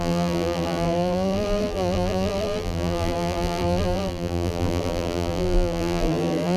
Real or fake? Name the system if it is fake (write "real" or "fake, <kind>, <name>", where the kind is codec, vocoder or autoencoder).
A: fake, vocoder, BigVGAN v2